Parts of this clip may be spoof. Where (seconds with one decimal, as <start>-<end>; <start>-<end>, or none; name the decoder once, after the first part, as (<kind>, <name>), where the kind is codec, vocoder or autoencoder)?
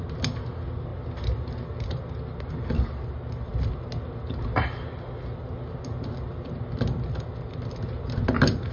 none